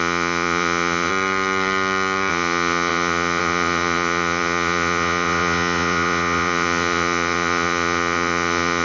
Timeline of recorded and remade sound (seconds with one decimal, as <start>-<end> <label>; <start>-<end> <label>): 0.0-1.1 remade; 1.1-2.3 recorded; 2.3-8.8 remade